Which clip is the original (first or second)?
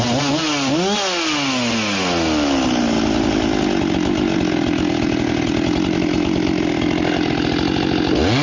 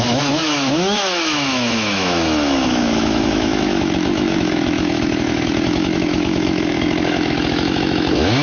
first